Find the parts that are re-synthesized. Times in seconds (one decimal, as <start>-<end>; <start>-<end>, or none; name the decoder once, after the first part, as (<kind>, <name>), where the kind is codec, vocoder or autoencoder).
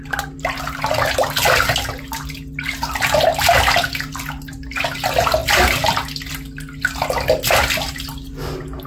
none